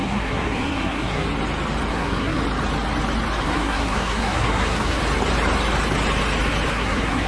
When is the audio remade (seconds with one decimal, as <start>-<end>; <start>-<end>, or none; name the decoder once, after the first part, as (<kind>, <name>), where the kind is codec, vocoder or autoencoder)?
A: 0.0-1.3 (codec, SNAC); 1.9-2.4; 3.4-5.0; 6.7-7.3